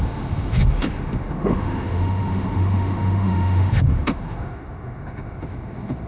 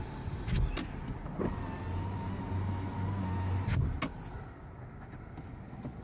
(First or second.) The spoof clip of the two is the first